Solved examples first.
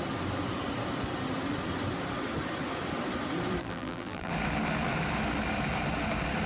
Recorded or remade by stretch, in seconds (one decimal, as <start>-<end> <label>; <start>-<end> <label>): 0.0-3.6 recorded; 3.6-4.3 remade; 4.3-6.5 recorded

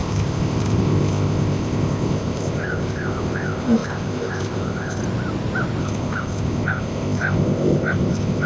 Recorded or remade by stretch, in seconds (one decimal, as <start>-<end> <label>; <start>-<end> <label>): 0.0-5.0 remade; 5.0-5.8 recorded; 5.8-8.5 remade

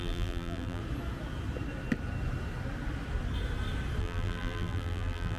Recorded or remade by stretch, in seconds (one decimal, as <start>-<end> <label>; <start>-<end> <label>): 0.0-0.8 remade; 0.8-4.0 recorded; 4.0-5.4 remade

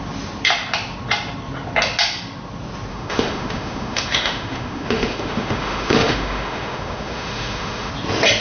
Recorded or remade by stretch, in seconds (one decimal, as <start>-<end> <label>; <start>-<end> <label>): 0.0-2.9 recorded; 2.9-7.9 remade; 7.9-8.4 recorded

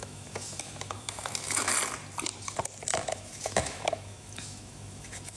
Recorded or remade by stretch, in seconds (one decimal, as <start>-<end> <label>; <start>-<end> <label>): 0.0-1.7 remade; 1.7-3.1 recorded; 3.1-5.4 remade

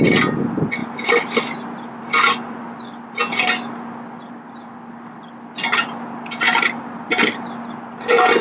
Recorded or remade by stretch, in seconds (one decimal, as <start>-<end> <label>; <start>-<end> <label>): 0.0-8.4 recorded